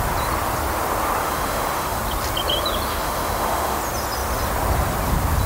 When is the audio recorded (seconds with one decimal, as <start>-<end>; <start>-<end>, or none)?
0.0-1.2; 2.0-2.9; 3.8-5.5